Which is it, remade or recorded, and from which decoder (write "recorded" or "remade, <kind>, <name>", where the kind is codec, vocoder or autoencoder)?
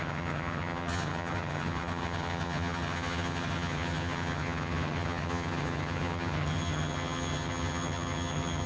remade, vocoder, HiFi-GAN